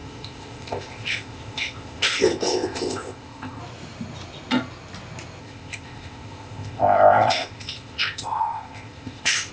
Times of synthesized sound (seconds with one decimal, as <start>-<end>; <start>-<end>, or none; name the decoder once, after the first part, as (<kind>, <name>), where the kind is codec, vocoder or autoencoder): 0.0-3.6 (codec, ZipCodec); 5.4-9.5